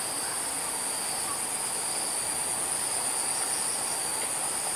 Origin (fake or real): real